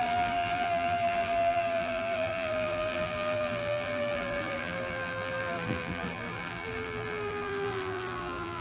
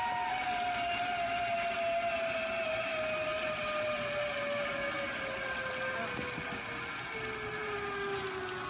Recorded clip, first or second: second